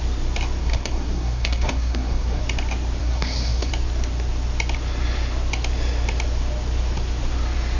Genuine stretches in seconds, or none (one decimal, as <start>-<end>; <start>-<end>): 0.0-0.6; 2.4-3.0; 3.7-7.8